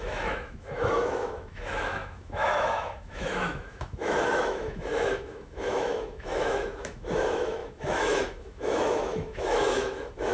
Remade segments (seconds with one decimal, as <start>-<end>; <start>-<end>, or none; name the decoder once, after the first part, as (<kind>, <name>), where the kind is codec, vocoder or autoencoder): 0.0-10.3 (autoencoder, DAC-VAE)